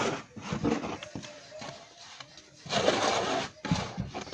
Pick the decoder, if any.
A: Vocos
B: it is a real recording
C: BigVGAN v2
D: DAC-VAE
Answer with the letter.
B